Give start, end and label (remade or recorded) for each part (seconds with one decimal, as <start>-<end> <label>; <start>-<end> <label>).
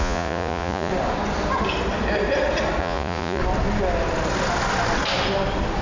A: 0.0-0.9 remade; 0.9-2.8 recorded; 2.8-3.4 remade; 3.4-5.8 recorded